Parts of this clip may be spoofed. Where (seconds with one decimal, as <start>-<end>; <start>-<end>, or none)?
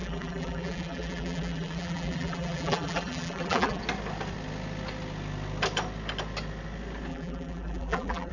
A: 0.0-3.8; 7.1-8.3